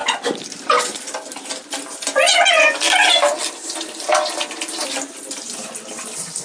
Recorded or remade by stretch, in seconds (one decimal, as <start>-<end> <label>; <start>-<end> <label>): 0.0-6.4 recorded

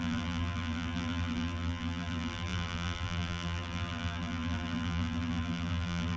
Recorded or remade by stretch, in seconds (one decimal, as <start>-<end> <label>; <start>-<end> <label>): 0.0-6.2 remade

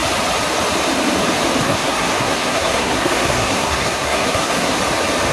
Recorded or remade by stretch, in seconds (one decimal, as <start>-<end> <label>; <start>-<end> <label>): 0.0-1.6 recorded; 1.6-4.8 remade; 4.8-5.3 recorded

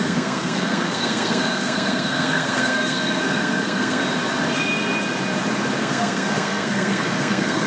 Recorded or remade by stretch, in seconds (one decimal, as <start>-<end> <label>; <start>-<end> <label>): 0.0-4.0 remade; 4.0-5.8 recorded; 5.8-7.7 remade

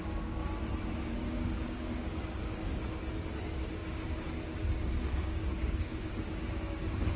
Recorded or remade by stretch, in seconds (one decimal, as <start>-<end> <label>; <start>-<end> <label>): 0.0-0.4 remade; 0.4-1.0 recorded; 1.0-7.2 remade